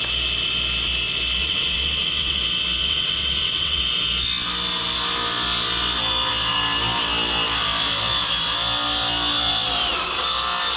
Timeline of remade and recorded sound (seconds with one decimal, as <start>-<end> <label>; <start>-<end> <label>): 0.0-1.4 recorded; 1.4-2.4 remade; 2.4-2.8 recorded; 2.8-3.8 remade; 3.8-10.8 recorded